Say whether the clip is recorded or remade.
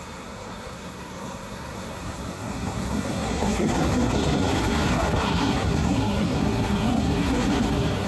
remade